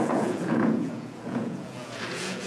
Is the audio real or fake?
fake